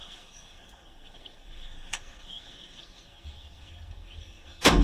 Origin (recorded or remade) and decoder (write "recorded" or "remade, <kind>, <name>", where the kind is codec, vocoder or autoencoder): remade, codec, SNAC